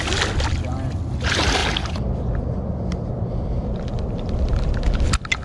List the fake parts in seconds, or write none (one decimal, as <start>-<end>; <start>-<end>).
none